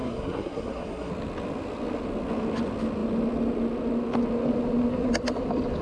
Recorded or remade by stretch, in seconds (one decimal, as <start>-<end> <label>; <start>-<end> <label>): 0.0-1.1 remade; 1.1-5.8 recorded